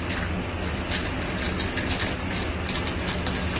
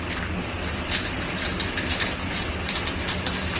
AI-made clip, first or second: second